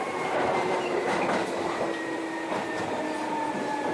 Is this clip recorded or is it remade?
remade